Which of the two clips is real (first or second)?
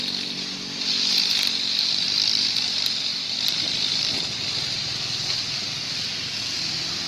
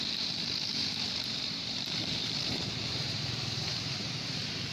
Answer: first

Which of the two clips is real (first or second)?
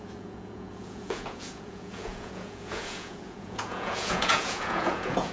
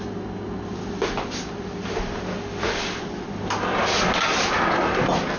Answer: second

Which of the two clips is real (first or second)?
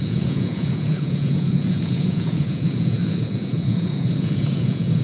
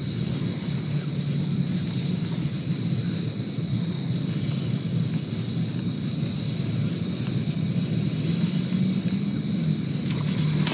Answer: second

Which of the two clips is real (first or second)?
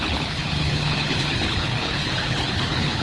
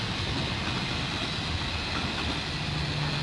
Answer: second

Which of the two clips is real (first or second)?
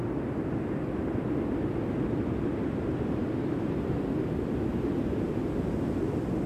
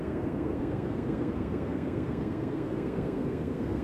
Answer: first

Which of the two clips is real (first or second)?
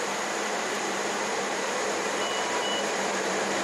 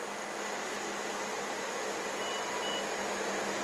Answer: second